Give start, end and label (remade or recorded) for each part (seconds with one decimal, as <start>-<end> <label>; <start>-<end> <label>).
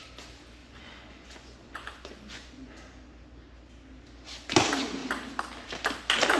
0.0-0.6 recorded; 0.6-2.7 remade; 2.7-6.4 recorded